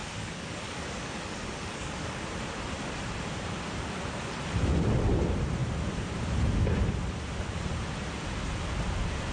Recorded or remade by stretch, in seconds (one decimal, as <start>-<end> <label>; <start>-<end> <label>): 0.0-2.2 remade; 2.2-9.3 recorded